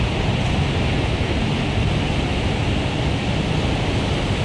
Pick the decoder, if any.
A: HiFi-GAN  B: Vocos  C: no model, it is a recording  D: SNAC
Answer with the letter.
C